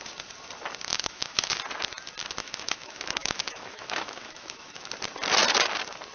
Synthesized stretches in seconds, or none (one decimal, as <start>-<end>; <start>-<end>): 0.9-1.6; 2.4-4.9